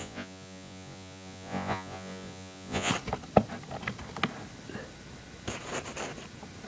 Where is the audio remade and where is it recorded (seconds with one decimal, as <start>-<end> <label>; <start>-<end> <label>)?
0.0-2.9 remade; 2.9-6.7 recorded